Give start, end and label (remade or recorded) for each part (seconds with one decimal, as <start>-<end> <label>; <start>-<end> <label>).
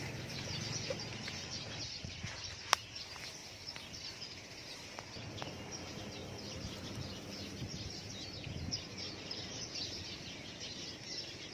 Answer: 0.0-6.2 recorded; 6.2-11.5 remade